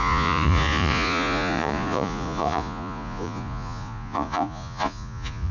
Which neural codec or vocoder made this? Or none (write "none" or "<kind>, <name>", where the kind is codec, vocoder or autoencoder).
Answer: vocoder, Vocos